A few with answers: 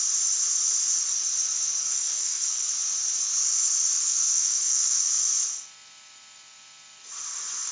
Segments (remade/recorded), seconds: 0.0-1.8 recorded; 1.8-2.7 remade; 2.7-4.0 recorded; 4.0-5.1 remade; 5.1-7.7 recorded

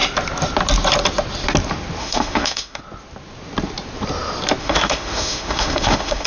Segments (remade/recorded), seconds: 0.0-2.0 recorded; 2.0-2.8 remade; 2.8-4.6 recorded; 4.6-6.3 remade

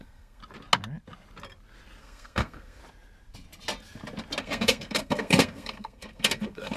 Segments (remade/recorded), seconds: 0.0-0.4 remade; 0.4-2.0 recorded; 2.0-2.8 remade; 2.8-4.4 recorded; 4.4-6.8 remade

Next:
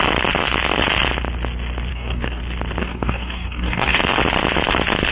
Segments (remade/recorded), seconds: 0.0-1.9 recorded; 1.9-2.4 remade; 2.4-2.8 recorded; 2.8-4.0 remade; 4.0-5.1 recorded